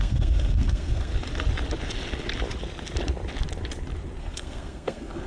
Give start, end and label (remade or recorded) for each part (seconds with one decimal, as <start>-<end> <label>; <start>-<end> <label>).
0.0-1.1 remade; 1.1-4.2 recorded; 4.2-5.3 remade